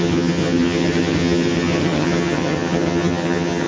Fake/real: fake